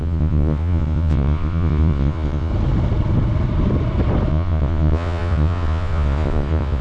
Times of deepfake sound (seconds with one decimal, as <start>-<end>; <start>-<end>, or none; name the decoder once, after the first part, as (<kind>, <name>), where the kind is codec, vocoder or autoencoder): 0.0-2.5 (vocoder, Vocos); 4.3-6.8